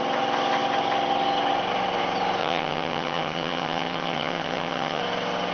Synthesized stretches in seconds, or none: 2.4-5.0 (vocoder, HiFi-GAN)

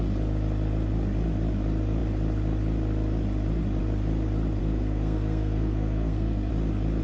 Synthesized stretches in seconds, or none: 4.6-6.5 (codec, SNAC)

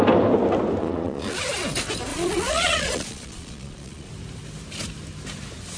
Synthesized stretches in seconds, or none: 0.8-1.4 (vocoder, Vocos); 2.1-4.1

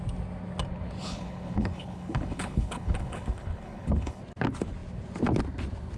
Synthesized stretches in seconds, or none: 1.0-4.2 (codec, HILCodec)